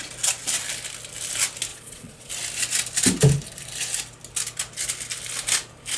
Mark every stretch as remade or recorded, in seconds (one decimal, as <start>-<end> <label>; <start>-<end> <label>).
0.0-1.7 recorded; 1.7-2.3 remade; 2.3-6.0 recorded